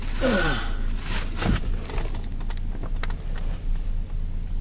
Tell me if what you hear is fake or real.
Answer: real